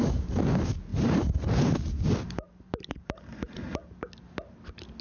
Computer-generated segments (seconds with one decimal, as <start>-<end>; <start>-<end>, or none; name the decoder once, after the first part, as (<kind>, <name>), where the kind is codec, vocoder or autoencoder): 0.9-3.9 (vocoder, BigVGAN v2)